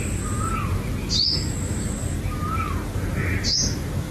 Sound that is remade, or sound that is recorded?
recorded